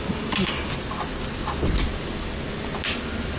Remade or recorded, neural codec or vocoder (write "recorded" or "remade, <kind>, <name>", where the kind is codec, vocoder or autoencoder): recorded